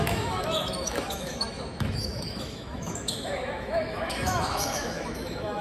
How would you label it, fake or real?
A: fake